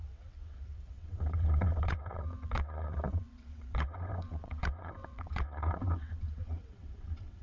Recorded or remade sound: remade